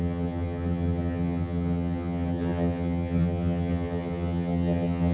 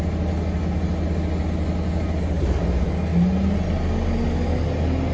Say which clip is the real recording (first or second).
second